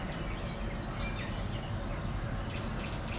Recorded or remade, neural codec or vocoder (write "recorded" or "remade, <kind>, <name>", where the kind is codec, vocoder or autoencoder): recorded